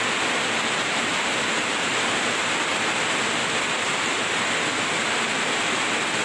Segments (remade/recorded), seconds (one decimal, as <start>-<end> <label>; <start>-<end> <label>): 0.0-1.9 recorded; 1.9-2.7 remade; 2.7-3.4 recorded; 3.4-4.1 remade; 4.1-6.2 recorded